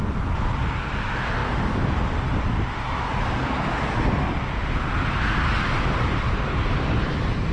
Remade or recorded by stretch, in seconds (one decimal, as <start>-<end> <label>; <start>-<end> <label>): 0.0-7.5 recorded